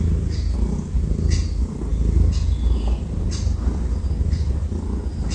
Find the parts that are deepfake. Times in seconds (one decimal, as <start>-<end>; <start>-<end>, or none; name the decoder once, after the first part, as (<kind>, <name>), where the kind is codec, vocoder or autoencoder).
none